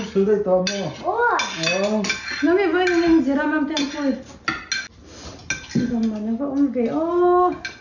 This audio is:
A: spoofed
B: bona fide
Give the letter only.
B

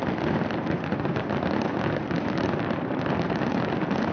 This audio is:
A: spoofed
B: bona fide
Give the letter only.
B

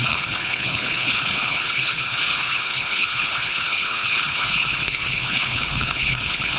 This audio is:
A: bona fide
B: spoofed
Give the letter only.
B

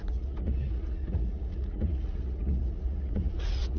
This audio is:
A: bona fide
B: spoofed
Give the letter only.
B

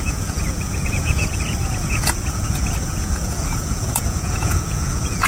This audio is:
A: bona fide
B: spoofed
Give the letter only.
B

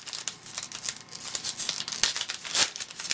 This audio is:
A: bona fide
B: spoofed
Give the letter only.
A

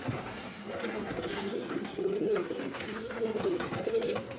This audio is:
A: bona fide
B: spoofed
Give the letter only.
B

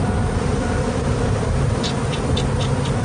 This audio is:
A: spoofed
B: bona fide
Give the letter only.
B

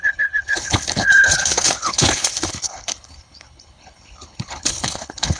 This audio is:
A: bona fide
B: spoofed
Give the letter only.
B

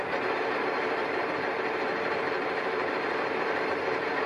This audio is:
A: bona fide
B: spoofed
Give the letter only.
B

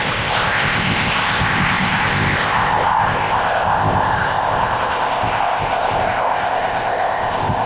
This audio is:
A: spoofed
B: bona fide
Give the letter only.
A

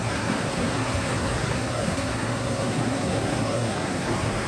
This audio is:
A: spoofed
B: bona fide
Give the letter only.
A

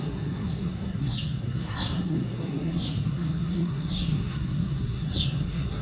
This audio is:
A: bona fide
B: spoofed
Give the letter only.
B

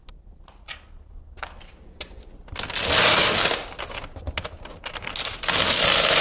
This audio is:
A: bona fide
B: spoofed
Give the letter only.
A